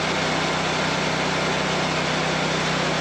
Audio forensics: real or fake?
real